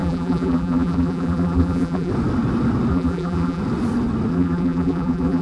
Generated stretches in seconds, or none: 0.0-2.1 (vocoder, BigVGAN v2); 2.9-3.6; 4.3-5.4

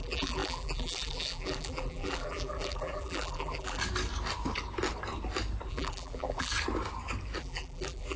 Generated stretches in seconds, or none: 0.0-3.8 (vocoder, BigVGAN v2); 5.7-6.5; 7.4-8.2